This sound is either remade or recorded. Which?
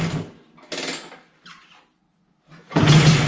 recorded